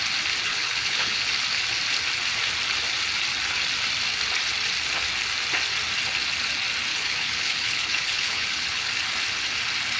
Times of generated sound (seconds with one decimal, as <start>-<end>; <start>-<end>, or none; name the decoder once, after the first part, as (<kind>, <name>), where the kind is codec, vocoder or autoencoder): 0.5-1.2 (codec, HILCodec); 6.9-8.9

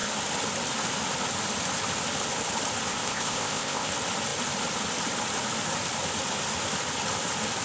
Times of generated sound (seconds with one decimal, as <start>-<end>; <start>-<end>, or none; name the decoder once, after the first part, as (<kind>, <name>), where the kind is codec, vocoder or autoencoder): 2.9-3.9 (codec, ZipCodec)